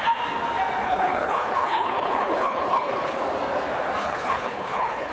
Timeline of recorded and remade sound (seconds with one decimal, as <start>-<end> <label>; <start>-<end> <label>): 0.0-0.8 recorded; 0.8-3.2 remade; 3.2-4.0 recorded; 4.0-5.1 remade